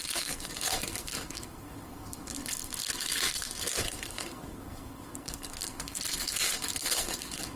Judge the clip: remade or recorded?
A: remade